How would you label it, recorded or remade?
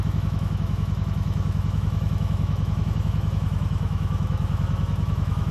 remade